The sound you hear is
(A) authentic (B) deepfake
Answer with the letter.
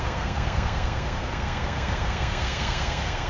B